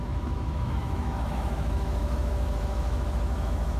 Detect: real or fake fake